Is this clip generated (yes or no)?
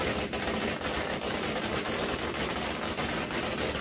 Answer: no